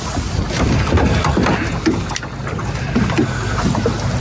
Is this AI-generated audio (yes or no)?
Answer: no